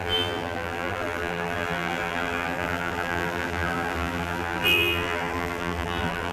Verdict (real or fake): fake